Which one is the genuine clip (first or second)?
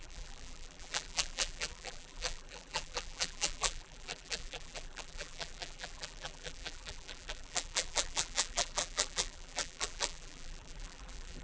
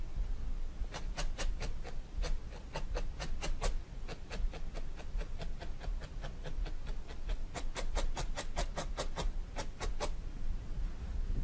second